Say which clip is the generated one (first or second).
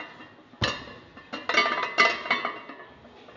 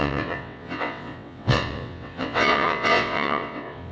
second